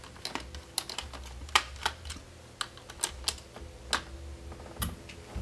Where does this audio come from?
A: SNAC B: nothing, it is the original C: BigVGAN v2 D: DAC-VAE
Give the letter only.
B